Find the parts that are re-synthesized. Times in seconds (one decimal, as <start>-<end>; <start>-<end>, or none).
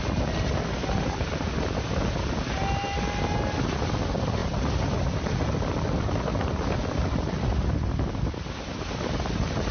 none